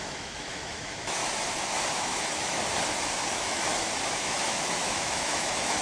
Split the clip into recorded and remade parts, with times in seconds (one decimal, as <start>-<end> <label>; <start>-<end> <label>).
0.0-1.2 remade; 1.2-1.9 recorded; 1.9-2.6 remade; 2.6-3.3 recorded; 3.3-3.7 remade; 3.7-4.2 recorded; 4.2-5.8 remade